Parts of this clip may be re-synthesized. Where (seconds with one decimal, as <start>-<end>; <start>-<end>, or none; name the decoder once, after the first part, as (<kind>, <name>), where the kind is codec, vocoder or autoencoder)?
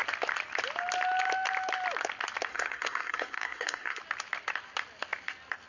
2.5-4.0 (codec, SNAC)